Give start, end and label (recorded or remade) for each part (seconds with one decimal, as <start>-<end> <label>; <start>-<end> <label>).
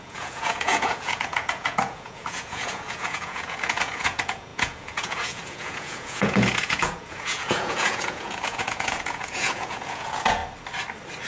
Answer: 0.0-10.4 remade; 10.4-11.3 recorded